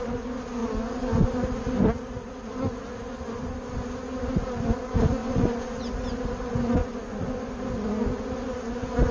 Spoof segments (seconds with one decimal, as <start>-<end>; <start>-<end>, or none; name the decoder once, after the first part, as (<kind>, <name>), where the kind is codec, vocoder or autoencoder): 5.2-5.8 (vocoder, Vocos); 6.8-7.5